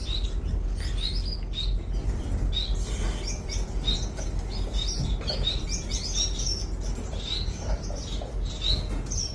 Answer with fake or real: real